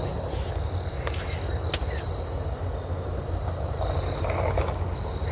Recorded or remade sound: recorded